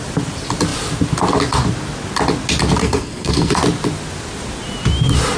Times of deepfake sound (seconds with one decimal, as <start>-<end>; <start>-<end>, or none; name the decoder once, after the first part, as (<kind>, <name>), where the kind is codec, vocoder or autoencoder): 2.8-3.6 (codec, SNAC)